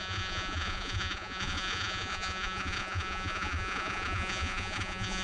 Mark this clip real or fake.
fake